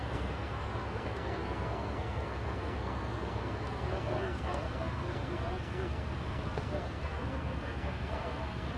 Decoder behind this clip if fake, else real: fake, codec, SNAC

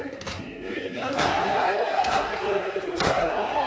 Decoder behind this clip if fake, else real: fake, codec, SNAC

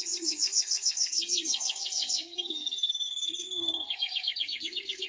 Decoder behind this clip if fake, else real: fake, codec, SNAC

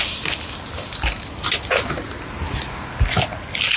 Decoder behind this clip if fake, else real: real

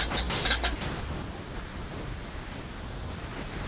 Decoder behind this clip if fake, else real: real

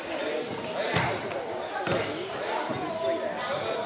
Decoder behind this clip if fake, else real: real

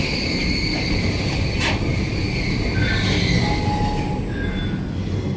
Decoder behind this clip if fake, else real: real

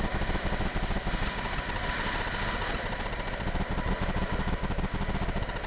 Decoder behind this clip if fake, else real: real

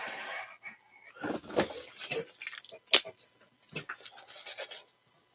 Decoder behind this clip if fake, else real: real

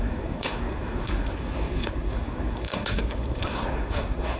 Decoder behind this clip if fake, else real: fake, codec, SNAC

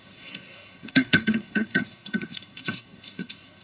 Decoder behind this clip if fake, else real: fake, codec, SNAC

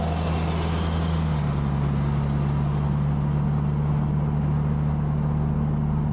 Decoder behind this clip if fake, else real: real